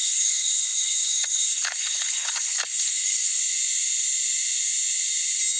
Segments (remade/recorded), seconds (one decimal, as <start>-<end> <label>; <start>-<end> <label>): 0.0-3.4 remade; 3.4-5.6 recorded